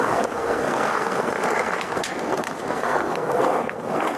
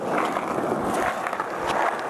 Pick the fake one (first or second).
first